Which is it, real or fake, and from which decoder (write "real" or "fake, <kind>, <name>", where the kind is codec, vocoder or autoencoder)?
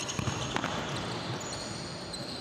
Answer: real